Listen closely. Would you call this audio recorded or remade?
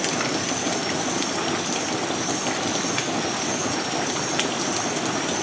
recorded